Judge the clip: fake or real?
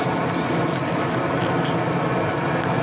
real